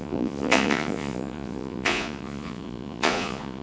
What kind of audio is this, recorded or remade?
remade